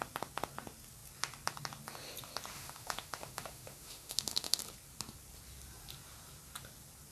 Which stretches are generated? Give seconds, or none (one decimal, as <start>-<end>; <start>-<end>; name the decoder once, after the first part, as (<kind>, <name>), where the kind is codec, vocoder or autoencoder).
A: 2.5-4.6 (autoencoder, DAC-VAE)